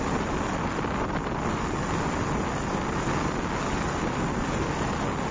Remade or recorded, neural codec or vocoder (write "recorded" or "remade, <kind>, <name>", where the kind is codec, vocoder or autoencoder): recorded